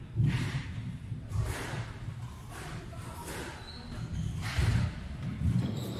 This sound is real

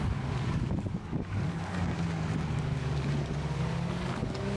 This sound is fake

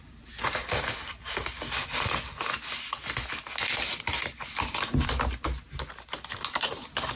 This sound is real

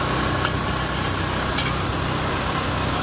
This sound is real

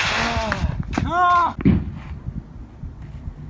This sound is real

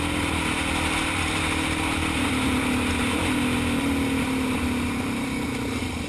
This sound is real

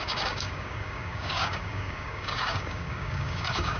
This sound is fake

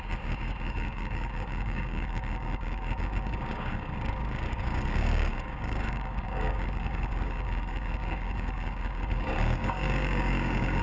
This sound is fake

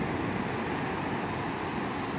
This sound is real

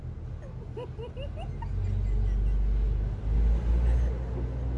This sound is real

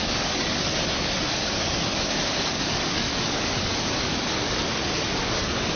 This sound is fake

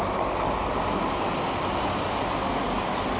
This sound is real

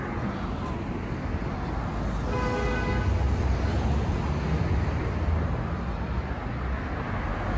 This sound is real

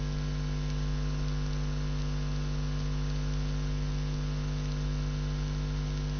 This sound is real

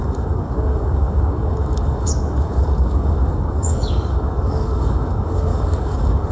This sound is fake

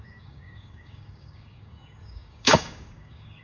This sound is fake